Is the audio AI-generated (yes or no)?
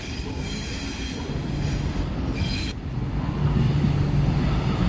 no